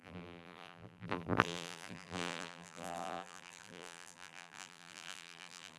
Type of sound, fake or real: fake